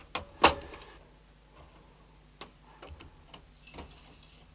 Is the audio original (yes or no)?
yes